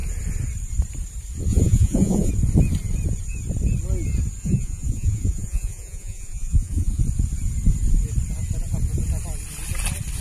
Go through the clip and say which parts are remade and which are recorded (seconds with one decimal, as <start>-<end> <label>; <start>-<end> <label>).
0.0-1.5 recorded; 1.5-2.3 remade; 2.3-4.4 recorded; 4.4-7.0 remade; 7.0-10.2 recorded